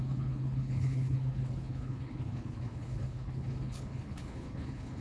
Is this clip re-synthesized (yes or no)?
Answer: yes